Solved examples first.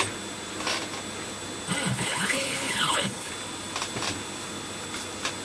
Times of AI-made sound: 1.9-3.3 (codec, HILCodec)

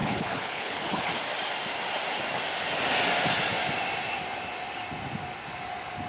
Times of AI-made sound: 0.0-1.1 (codec, HILCodec)